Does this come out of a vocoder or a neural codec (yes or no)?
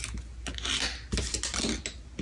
no